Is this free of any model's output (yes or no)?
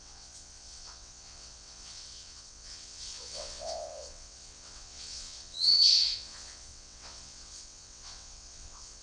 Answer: no